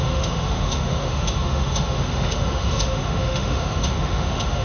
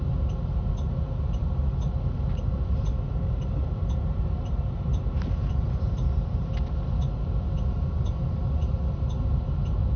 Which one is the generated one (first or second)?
first